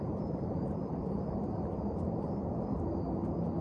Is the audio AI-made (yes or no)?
yes